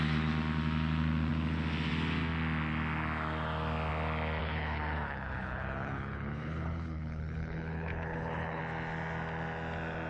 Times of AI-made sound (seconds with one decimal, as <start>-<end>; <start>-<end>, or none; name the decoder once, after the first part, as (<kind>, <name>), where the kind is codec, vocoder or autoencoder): 4.4-8.6 (codec, HILCodec)